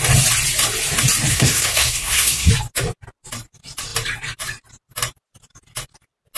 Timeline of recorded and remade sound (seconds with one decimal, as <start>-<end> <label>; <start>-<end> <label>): 0.0-1.3 recorded; 1.3-2.5 remade; 2.5-6.4 recorded